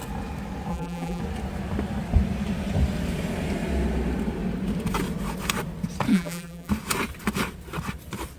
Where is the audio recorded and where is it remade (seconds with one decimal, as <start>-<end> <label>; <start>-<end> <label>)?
0.0-0.7 recorded; 0.7-1.2 remade; 1.2-6.1 recorded; 6.1-6.7 remade; 6.7-8.4 recorded